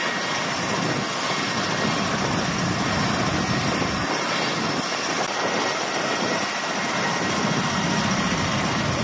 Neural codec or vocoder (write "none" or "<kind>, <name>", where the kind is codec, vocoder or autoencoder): none